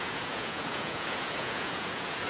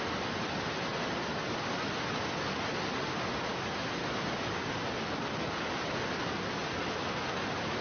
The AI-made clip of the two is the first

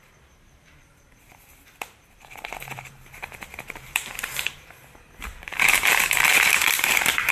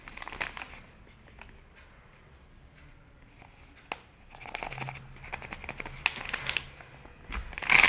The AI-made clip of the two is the first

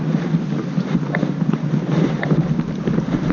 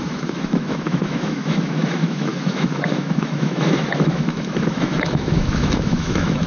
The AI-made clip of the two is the second